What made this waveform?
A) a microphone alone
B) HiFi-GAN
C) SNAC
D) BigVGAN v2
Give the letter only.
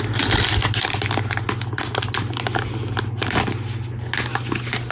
A